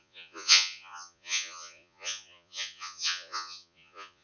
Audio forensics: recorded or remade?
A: remade